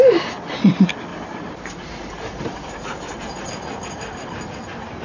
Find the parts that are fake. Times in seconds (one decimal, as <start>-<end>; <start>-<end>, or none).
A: 1.1-3.5